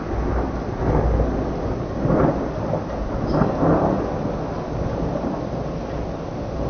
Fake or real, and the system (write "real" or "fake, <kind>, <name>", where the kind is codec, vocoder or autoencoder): real